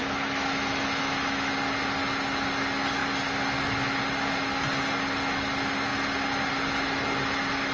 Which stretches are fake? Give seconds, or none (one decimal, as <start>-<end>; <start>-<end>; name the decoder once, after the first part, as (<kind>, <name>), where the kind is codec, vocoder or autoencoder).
0.0-1.5 (autoencoder, DAC-VAE)